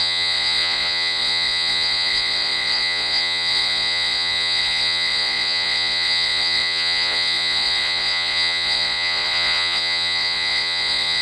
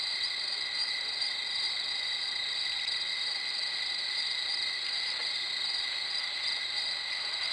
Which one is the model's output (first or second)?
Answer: first